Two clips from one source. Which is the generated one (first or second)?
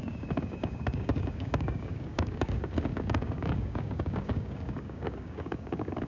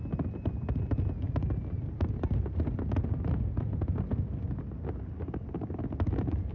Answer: first